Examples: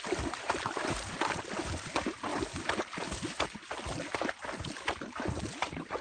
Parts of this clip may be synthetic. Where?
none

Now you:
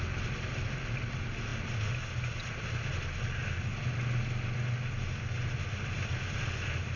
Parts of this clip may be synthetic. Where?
none

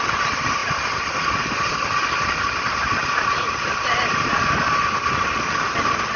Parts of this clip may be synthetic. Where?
none